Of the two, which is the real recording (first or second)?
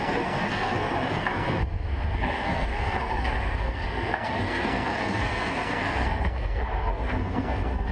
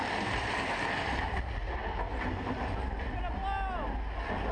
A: second